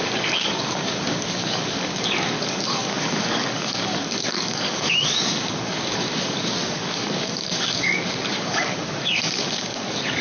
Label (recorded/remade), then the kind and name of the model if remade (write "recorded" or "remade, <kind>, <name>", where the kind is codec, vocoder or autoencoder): remade, codec, DAC